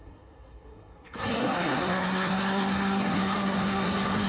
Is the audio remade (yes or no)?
yes